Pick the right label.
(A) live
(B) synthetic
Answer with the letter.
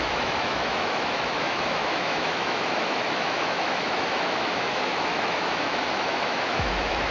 B